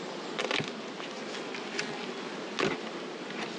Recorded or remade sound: recorded